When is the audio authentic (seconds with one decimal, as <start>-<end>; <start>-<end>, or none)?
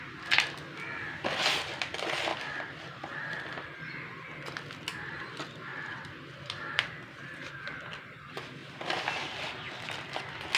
0.0-2.3; 3.8-5.7; 8.2-10.6